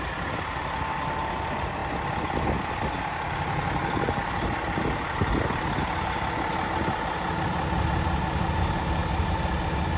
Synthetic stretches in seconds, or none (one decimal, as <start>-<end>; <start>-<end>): none